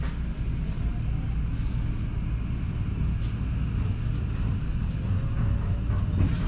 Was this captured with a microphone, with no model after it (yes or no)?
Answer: yes